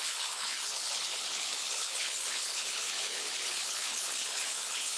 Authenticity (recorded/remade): remade